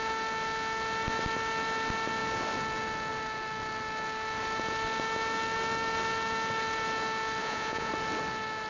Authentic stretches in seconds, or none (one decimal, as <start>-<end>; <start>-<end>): 0.0-7.4; 7.9-8.7

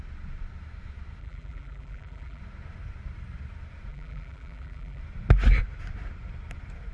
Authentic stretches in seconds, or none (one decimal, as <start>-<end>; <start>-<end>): 0.0-1.2; 2.4-3.9; 5.0-6.9